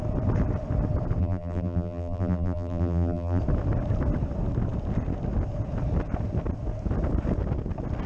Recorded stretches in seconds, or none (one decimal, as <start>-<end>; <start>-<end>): 0.0-1.2; 3.4-8.1